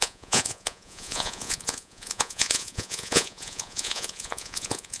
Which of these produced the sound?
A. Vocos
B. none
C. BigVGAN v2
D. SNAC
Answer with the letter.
A